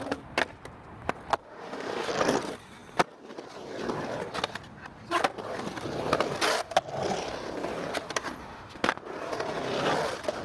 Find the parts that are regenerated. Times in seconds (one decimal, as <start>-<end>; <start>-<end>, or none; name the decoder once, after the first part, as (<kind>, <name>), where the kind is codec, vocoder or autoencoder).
1.4-2.1 (autoencoder, DAC-VAE); 8.4-9.0